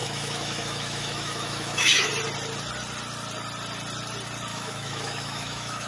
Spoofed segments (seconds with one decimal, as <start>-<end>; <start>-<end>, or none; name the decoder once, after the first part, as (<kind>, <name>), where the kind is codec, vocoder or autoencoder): 0.0-2.1 (autoencoder, DAC-VAE); 4.5-5.9